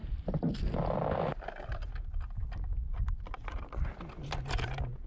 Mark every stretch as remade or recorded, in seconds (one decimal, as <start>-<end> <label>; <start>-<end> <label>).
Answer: 0.0-5.1 recorded